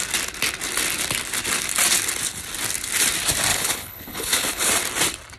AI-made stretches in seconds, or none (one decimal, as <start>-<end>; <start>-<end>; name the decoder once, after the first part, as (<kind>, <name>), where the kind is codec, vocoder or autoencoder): 3.5-4.7 (codec, HILCodec)